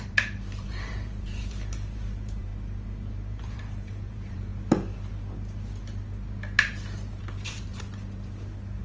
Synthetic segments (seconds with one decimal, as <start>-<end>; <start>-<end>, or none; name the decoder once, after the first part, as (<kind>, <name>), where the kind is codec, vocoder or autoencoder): 0.0-2.5 (vocoder, BigVGAN v2); 3.3-4.5; 7.2-7.7

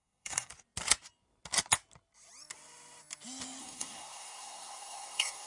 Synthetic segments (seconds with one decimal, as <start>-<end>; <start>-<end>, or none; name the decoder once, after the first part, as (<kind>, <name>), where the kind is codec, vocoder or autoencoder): 0.0-0.5 (codec, SNAC); 3.6-5.5

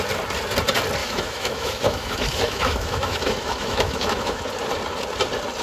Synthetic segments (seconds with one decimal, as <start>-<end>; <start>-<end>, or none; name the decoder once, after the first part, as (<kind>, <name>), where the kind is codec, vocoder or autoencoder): 1.0-4.4 (autoencoder, DAC-VAE)

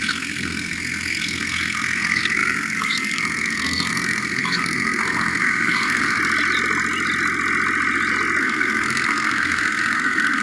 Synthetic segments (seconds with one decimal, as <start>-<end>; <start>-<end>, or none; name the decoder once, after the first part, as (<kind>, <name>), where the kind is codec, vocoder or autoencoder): 0.0-6.2 (codec, SNAC); 8.4-10.4

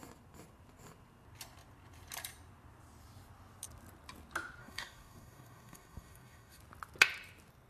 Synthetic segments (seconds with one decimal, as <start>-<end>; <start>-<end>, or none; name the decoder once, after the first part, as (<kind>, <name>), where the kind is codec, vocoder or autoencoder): 4.6-6.6 (codec, DAC)